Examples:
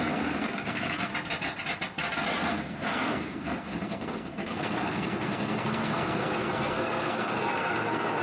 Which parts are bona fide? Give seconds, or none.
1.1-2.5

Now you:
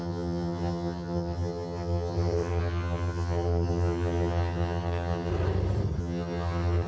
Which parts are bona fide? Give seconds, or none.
5.3-6.0

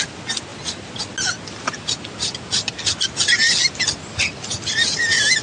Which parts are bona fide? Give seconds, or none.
0.0-5.4

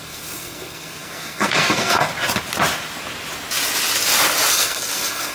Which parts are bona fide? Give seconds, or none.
2.1-4.5